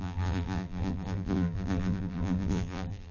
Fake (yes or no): yes